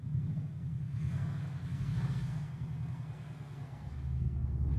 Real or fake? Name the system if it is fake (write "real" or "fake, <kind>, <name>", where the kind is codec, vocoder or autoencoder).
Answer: fake, codec, SNAC